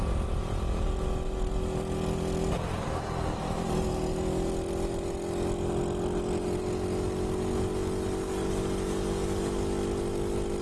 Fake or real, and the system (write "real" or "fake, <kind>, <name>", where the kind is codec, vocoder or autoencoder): real